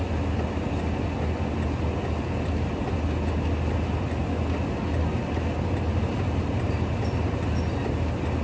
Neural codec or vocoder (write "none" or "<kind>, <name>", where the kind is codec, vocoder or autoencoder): none